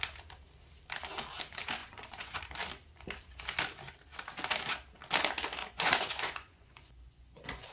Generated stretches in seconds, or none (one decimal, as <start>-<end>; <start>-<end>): 1.8-2.4; 5.6-7.7

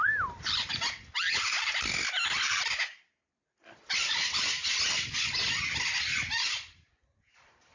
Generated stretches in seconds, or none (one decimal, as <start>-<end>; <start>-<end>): none

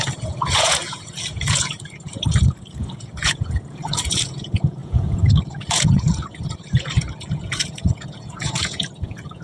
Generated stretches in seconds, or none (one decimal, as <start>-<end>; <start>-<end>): 0.0-9.4

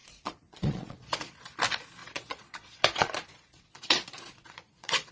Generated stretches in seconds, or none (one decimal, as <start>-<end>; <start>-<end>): 0.0-1.4; 2.0-5.1

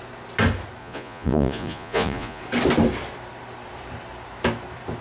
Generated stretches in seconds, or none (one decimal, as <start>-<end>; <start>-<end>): 0.8-2.4